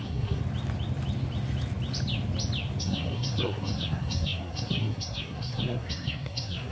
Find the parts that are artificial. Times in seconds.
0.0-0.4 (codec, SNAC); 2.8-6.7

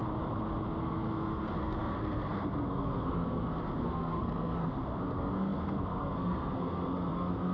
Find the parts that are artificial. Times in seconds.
0.8-7.5 (codec, SNAC)

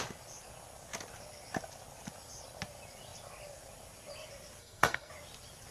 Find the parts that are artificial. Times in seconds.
4.6-5.1 (codec, SNAC)

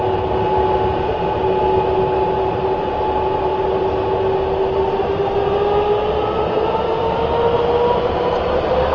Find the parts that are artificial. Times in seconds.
none

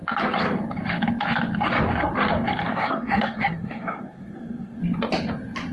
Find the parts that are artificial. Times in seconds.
2.7-4.8 (codec, SNAC)

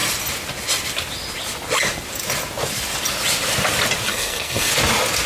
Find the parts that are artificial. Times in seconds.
4.1-4.7 (codec, SNAC)